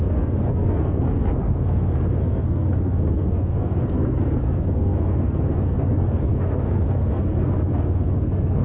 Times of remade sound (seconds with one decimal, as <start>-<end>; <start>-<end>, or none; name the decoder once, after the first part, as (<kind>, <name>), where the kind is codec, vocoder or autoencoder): 0.0-8.6 (codec, SNAC)